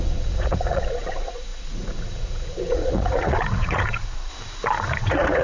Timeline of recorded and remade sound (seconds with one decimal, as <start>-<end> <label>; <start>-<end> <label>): 0.0-4.3 remade; 4.3-5.0 recorded; 5.0-5.4 remade